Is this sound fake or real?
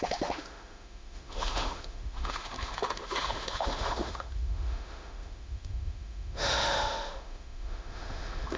fake